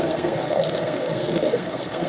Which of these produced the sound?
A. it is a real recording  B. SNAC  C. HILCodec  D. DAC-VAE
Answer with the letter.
B